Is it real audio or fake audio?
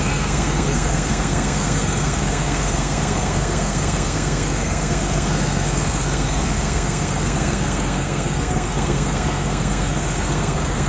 fake